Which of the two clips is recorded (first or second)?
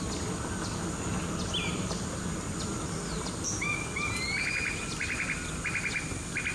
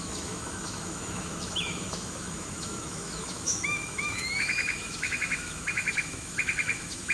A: first